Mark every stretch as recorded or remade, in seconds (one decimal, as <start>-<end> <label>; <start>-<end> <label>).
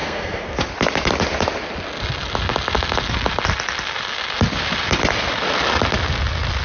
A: 0.0-0.6 remade; 0.6-6.6 recorded